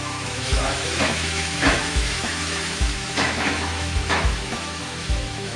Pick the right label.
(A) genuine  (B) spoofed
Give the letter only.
B